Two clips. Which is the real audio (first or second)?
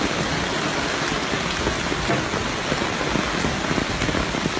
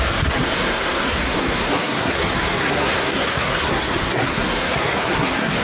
first